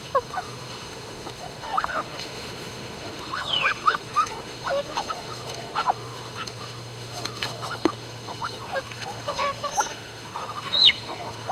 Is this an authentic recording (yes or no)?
no